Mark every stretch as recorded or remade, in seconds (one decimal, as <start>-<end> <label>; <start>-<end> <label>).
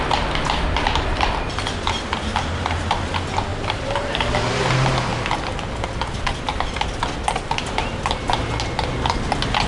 0.0-2.3 recorded; 2.3-3.0 remade; 3.0-3.5 recorded; 3.5-4.5 remade; 4.5-9.7 recorded